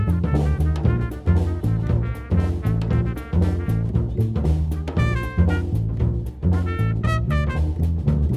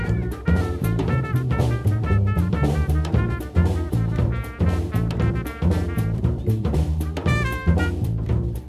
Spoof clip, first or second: second